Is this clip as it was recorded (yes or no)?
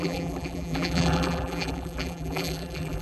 no